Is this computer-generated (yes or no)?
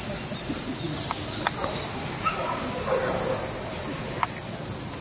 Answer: no